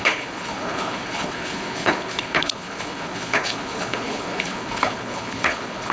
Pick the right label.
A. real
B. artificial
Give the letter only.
B